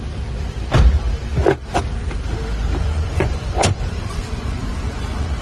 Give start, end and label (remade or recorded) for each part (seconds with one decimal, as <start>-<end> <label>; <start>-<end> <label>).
0.0-2.8 recorded; 2.8-5.4 remade